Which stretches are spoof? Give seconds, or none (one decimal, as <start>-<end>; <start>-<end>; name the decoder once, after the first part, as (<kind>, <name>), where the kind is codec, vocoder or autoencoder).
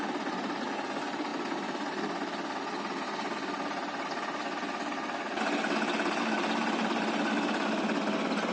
none